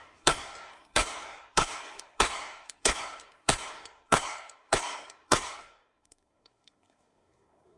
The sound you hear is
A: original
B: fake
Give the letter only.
B